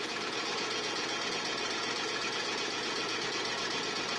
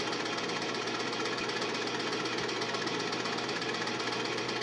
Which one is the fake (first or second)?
first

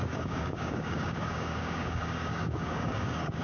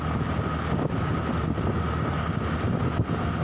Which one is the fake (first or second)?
first